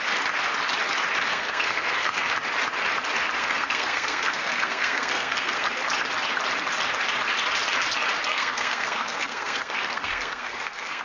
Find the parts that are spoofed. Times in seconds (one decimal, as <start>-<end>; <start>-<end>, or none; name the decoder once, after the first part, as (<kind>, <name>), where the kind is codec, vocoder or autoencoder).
1.3-2.3 (codec, SNAC); 3.4-5.7; 8.3-11.0